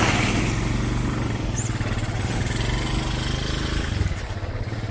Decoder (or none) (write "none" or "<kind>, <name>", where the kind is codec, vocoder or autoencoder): none